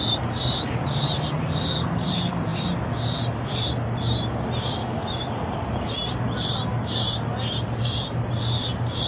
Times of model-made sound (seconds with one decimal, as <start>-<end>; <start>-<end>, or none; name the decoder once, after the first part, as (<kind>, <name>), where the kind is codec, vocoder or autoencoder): 4.8-5.3 (autoencoder, DAC-VAE)